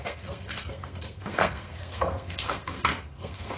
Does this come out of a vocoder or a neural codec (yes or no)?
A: yes